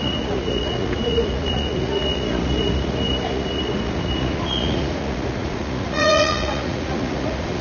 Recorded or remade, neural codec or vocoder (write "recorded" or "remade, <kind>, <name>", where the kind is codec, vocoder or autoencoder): remade, vocoder, Vocos